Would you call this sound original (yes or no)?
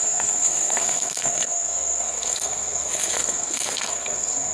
no